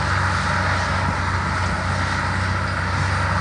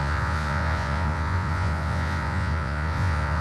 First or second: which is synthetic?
second